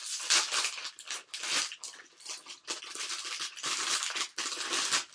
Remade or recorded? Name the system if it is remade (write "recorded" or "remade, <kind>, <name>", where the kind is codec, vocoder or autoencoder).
recorded